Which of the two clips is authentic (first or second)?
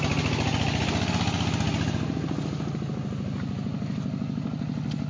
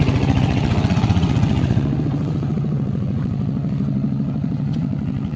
first